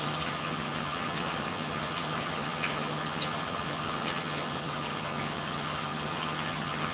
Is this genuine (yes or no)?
no